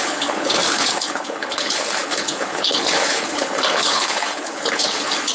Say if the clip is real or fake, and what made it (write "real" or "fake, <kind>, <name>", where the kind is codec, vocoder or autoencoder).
fake, codec, HILCodec